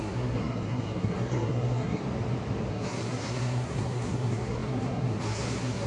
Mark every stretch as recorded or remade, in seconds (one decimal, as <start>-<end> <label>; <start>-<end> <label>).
0.0-2.0 remade; 2.0-2.7 recorded; 2.7-5.9 remade